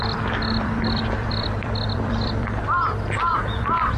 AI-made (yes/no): yes